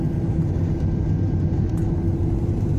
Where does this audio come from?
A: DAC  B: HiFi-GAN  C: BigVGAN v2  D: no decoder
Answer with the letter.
C